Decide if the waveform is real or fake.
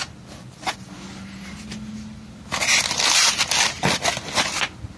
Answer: real